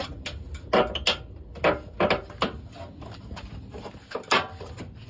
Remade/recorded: recorded